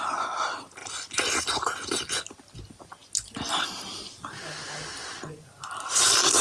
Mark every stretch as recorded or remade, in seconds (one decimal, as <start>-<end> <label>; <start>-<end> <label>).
0.0-5.0 recorded; 5.0-5.6 remade; 5.6-6.4 recorded